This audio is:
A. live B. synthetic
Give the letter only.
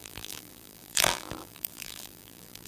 B